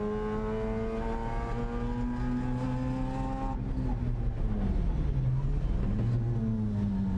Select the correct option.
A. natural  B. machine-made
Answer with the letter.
A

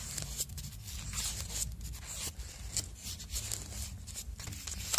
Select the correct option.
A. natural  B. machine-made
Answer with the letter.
A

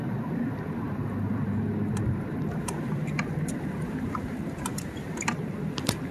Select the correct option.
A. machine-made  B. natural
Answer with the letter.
A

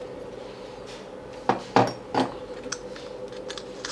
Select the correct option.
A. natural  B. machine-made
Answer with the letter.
A